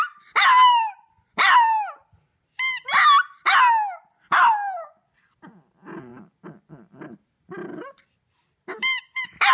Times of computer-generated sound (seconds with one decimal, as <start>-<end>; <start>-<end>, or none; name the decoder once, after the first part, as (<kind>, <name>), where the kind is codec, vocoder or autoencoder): none